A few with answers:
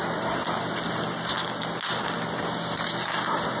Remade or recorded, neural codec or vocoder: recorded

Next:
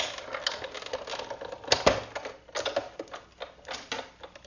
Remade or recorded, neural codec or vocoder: recorded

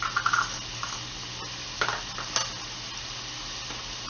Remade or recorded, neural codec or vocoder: recorded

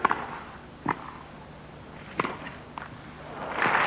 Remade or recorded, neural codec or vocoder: recorded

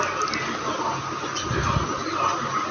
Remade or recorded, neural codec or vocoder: recorded